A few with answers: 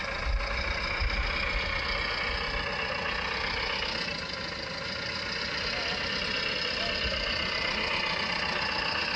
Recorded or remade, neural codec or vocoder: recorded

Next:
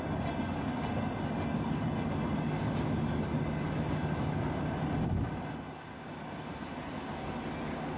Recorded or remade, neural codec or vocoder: recorded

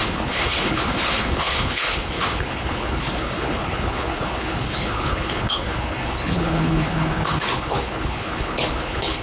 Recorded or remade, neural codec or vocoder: remade, codec, HILCodec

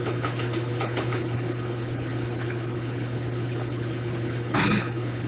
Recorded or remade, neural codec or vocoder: remade, codec, HILCodec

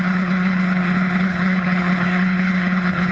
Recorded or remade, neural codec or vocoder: remade, codec, HILCodec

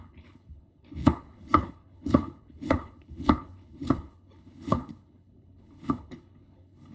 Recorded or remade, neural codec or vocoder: remade, codec, HILCodec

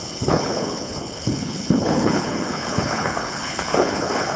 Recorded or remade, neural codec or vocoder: remade, codec, HILCodec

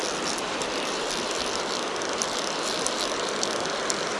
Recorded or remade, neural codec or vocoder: recorded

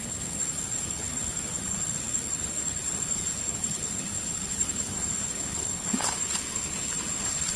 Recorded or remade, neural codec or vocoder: remade, codec, HILCodec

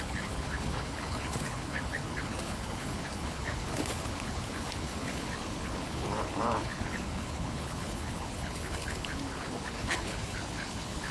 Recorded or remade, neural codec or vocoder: remade, codec, HILCodec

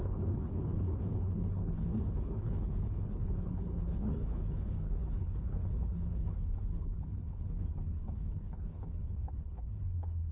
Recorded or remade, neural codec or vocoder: remade, codec, HILCodec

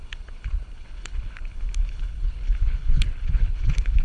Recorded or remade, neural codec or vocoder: remade, codec, HILCodec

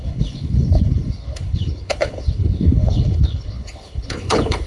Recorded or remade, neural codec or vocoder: remade, codec, HILCodec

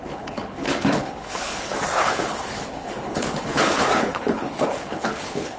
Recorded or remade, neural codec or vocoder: remade, codec, HILCodec